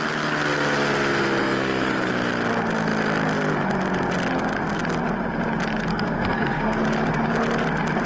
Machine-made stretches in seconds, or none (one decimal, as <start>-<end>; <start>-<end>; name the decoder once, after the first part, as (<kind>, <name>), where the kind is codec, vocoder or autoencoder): 1.4-2.1 (codec, SNAC); 5.9-6.8